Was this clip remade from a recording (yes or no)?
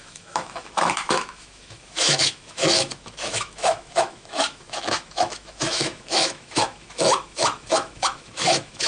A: yes